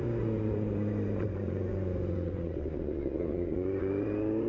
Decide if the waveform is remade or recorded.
remade